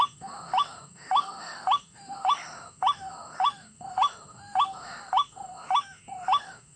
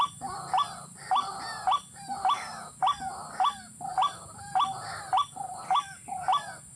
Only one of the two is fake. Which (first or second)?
first